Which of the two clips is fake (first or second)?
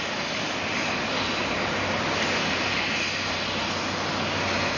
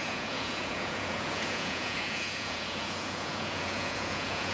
second